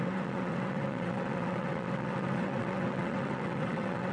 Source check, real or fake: fake